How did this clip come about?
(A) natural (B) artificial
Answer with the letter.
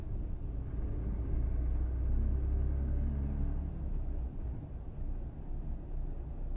A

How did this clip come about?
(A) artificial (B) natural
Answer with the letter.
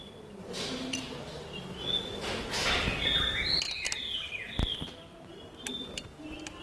B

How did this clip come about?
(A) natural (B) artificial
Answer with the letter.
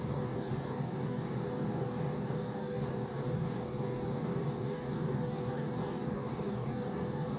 B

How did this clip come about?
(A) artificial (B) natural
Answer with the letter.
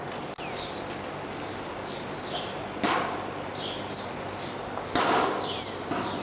B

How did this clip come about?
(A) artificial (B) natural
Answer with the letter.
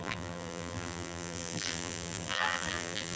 A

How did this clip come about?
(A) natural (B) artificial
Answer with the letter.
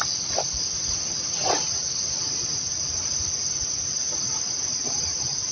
B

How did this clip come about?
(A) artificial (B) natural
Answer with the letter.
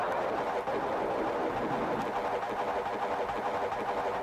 B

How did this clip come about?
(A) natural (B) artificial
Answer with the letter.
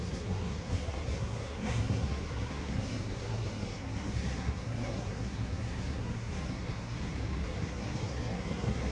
B